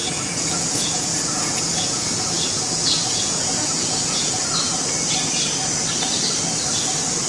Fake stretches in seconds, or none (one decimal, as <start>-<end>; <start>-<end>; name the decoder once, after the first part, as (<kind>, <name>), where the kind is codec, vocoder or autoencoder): 0.0-4.4 (vocoder, Vocos)